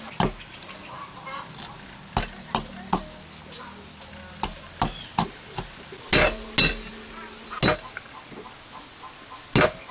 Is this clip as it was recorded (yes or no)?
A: yes